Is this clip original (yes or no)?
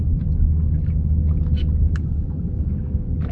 yes